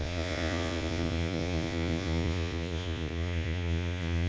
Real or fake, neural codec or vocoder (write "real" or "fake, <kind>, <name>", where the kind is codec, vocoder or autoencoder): fake, vocoder, Vocos